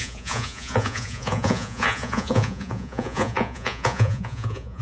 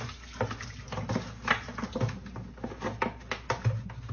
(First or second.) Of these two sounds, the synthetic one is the first